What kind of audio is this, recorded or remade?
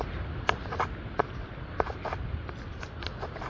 recorded